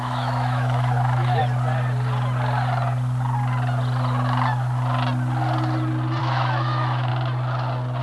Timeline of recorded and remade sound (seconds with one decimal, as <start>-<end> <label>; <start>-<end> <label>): 0.0-1.4 remade; 1.4-6.2 recorded; 6.2-7.1 remade; 7.1-8.0 recorded